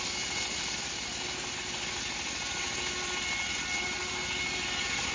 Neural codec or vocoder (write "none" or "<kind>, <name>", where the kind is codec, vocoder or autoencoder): none